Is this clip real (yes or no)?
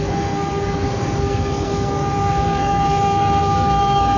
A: no